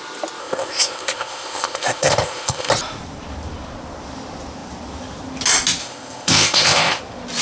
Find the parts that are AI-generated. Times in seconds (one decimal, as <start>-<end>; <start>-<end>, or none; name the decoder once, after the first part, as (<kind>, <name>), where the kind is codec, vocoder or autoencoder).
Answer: 0.4-2.7 (codec, ZipCodec); 5.8-7.0